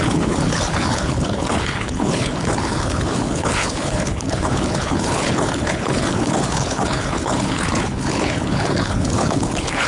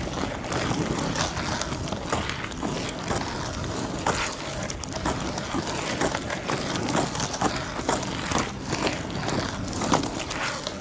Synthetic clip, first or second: first